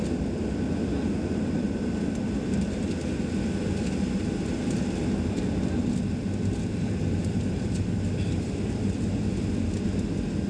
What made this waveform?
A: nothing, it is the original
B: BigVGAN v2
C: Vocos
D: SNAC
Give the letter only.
A